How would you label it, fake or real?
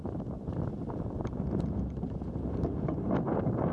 real